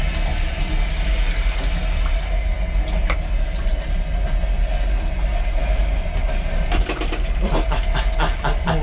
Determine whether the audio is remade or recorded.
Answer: recorded